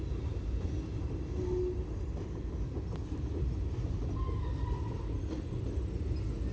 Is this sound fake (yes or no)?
no